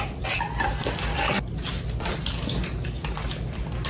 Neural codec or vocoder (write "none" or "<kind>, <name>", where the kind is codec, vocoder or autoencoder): none